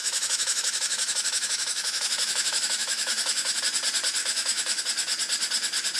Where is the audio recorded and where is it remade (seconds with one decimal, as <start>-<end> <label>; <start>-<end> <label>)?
0.0-3.6 remade; 3.6-4.2 recorded; 4.2-4.8 remade; 4.8-6.0 recorded